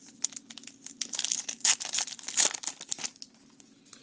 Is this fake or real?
real